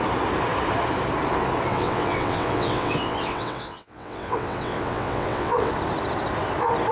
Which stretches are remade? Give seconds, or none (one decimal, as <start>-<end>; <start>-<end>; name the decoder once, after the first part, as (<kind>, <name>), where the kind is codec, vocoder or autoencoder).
1.7-5.7 (vocoder, WaveNeXt)